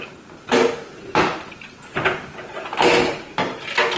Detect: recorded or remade recorded